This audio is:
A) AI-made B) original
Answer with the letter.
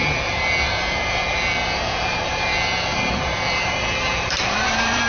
A